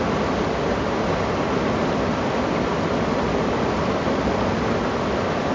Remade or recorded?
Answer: recorded